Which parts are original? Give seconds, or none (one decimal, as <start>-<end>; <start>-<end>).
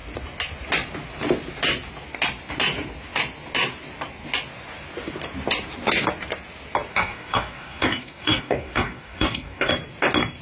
0.0-6.9; 9.7-10.4